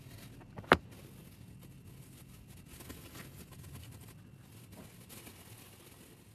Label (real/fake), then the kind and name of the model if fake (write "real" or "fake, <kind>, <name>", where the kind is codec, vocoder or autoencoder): real